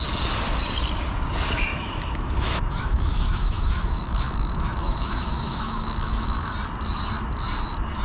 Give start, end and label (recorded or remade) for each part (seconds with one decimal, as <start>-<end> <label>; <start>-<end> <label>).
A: 0.0-1.7 recorded; 1.7-6.5 remade; 6.5-8.0 recorded